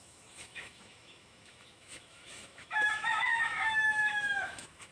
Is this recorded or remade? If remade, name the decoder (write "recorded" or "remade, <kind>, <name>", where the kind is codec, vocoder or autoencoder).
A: remade, autoencoder, DAC-VAE